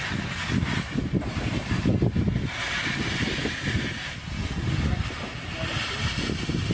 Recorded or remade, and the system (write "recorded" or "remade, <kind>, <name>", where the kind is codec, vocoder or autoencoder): recorded